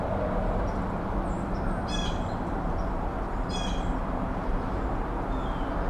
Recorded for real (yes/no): yes